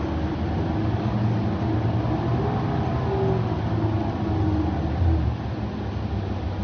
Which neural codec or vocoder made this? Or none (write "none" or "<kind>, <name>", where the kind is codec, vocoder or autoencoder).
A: none